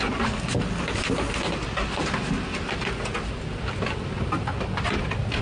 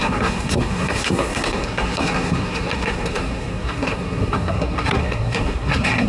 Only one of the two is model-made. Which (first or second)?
second